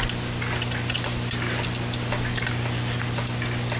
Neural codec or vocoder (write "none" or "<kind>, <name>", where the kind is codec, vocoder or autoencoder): none